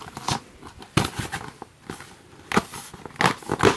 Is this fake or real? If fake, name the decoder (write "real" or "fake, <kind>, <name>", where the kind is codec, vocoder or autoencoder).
real